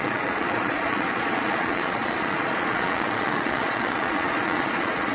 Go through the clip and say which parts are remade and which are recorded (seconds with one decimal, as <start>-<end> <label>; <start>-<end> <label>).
0.0-5.1 remade